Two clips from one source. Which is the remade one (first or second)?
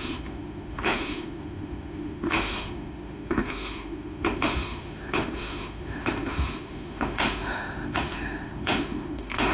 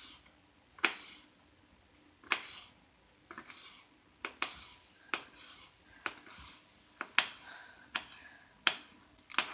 first